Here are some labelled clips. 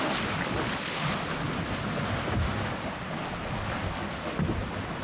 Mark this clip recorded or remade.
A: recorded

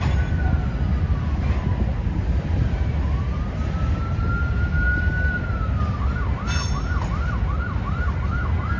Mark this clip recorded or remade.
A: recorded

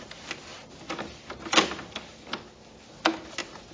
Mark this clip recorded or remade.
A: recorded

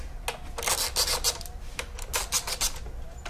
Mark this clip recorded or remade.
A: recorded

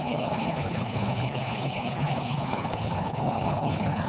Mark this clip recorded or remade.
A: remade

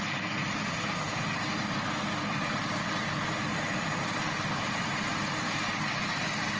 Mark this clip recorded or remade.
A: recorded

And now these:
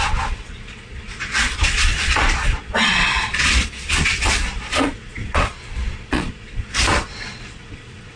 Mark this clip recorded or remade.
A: remade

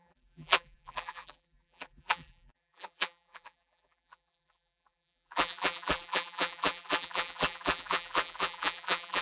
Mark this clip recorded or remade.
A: remade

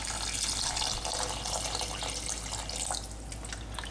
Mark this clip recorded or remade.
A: recorded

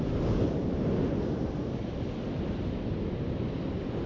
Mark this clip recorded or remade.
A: recorded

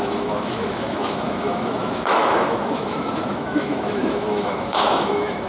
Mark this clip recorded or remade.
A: remade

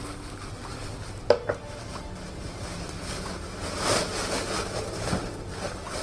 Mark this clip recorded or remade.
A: recorded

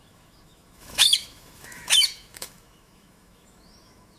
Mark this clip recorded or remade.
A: remade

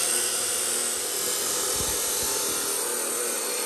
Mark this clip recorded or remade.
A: recorded